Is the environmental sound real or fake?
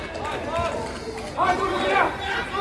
real